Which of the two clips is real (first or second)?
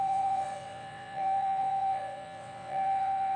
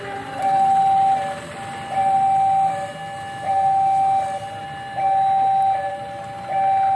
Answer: second